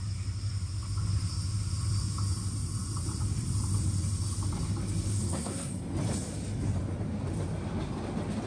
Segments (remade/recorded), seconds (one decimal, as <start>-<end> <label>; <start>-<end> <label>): 0.0-5.1 recorded; 5.1-5.7 remade; 5.7-8.5 recorded